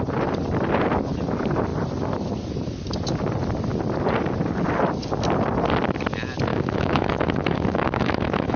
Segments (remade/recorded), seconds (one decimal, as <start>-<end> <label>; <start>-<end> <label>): 0.0-6.5 recorded; 6.5-8.6 remade

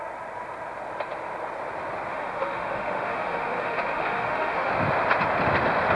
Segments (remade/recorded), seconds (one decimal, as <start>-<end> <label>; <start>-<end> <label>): 0.0-2.1 recorded; 2.1-4.7 remade; 4.7-5.9 recorded

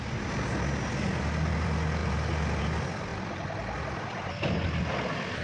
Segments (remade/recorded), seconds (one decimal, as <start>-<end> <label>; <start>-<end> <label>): 0.0-5.4 recorded

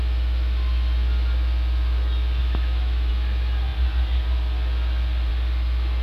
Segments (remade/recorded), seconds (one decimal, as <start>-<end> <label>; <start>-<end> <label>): 0.0-2.4 recorded; 2.4-3.1 remade; 3.1-6.0 recorded

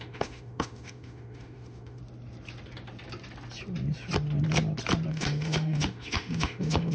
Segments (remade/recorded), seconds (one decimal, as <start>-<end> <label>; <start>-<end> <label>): 0.0-2.0 remade; 2.0-5.1 recorded; 5.1-6.9 remade

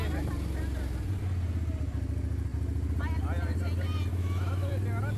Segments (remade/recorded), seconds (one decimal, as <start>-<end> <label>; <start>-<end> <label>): 0.0-4.1 recorded; 4.1-4.7 remade; 4.7-5.2 recorded